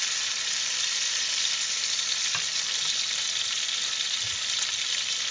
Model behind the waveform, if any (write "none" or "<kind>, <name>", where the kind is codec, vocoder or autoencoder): none